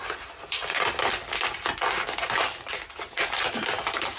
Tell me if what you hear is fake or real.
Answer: real